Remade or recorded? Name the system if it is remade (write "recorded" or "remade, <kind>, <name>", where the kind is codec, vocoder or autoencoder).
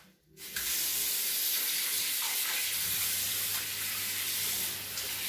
recorded